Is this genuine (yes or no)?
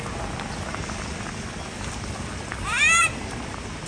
yes